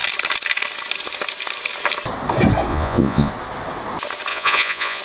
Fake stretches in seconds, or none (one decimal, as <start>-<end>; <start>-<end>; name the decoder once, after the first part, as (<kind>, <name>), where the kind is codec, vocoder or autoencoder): 2.7-3.3 (vocoder, Vocos); 4.3-5.0

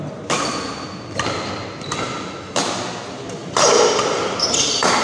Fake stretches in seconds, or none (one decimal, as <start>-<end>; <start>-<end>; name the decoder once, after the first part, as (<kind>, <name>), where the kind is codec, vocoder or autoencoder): none

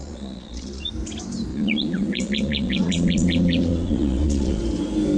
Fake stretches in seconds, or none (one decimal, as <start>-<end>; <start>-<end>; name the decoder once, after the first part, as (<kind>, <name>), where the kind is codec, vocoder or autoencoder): 0.0-0.9 (vocoder, Vocos); 1.5-4.6

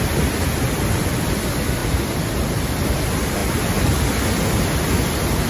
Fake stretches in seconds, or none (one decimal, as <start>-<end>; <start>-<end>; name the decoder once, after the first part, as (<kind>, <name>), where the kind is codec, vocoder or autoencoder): none

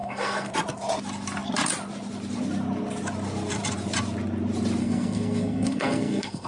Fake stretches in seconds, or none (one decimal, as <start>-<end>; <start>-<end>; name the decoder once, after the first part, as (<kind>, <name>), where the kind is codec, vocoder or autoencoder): 0.0-0.5 (codec, SNAC); 4.8-6.5

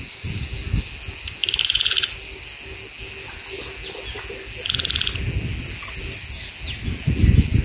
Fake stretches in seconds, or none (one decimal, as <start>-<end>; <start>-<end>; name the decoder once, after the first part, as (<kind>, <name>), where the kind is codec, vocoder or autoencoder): none